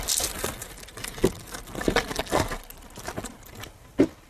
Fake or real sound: real